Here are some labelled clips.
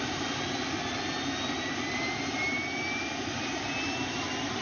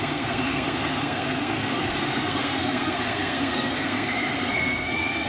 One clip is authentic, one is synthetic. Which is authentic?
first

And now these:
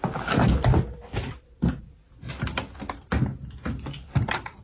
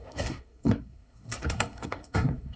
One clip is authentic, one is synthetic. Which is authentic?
first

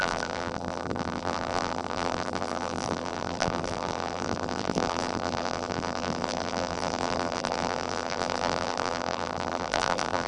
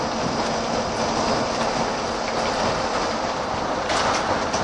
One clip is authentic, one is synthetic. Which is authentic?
second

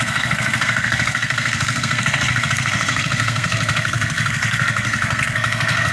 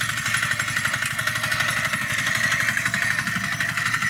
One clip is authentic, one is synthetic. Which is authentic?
second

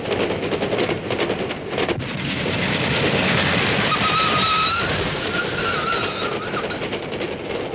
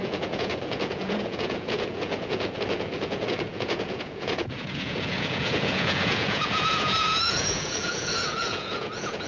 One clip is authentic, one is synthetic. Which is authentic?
first